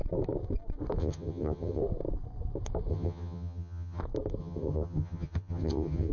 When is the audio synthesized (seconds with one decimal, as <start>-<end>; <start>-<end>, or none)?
1.0-1.8; 2.9-4.0; 4.4-6.1